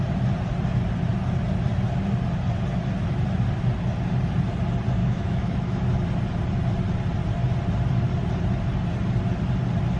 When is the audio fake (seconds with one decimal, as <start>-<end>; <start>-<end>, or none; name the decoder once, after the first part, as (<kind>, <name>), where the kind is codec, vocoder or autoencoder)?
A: 5.0-5.9 (autoencoder, DAC-VAE)